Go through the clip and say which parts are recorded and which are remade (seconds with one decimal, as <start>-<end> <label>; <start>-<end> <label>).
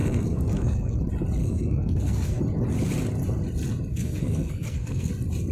0.0-1.0 remade; 1.0-1.4 recorded; 1.4-2.4 remade; 2.4-3.9 recorded; 3.9-5.1 remade; 5.1-5.5 recorded